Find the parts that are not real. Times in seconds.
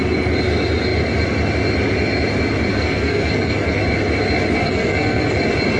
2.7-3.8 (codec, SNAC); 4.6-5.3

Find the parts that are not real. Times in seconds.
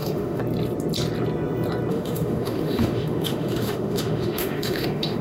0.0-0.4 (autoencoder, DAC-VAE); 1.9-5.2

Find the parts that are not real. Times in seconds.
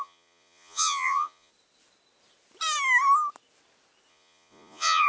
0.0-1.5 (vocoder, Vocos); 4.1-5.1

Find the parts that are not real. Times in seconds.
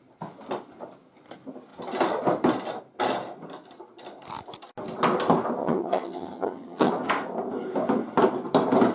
5.6-6.9 (vocoder, HiFi-GAN)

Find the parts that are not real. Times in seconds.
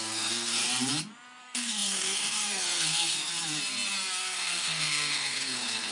0.0-0.6 (codec, SNAC); 1.4-3.3; 4.2-5.9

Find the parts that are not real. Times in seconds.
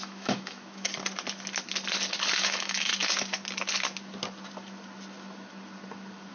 0.0-0.9 (autoencoder, DAC-VAE); 2.4-2.9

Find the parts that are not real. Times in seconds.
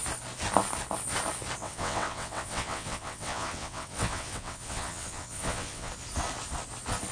1.6-5.9 (vocoder, WaveNeXt)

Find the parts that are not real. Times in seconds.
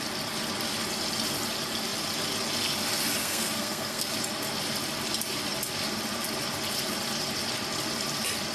3.2-4.1 (codec, SNAC)